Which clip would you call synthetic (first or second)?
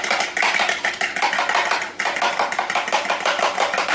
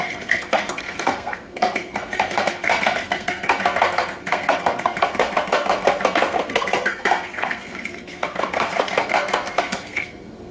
second